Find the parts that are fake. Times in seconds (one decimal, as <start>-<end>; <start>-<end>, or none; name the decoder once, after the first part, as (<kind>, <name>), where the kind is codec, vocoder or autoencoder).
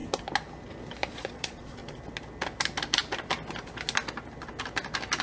1.1-1.8 (vocoder, Vocos)